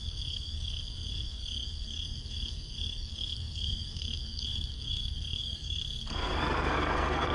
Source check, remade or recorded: remade